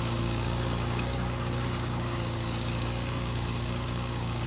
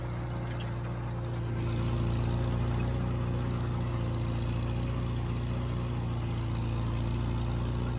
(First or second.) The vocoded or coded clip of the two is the first